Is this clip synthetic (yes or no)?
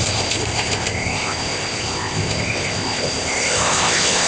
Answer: yes